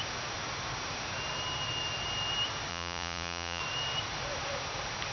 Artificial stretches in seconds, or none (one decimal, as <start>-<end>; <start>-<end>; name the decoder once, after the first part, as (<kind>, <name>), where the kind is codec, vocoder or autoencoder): 2.7-3.6 (vocoder, Vocos)